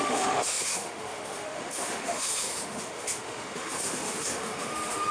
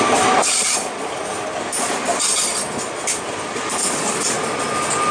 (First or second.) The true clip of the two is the second